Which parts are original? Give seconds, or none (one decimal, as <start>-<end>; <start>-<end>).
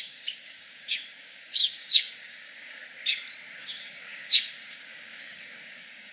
2.8-3.6